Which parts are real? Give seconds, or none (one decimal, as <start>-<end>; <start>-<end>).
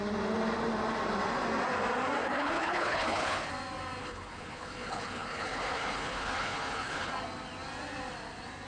0.0-2.2; 3.5-4.0; 7.1-8.7